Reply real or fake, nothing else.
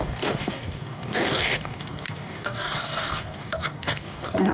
fake